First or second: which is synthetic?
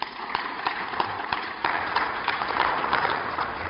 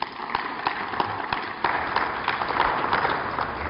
first